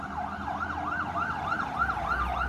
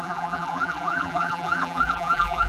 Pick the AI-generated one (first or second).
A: second